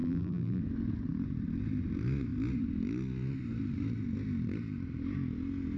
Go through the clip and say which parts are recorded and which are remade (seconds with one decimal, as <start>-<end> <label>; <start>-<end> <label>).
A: 0.0-0.6 remade; 0.6-5.8 recorded